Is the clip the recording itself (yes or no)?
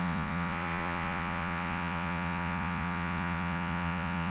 no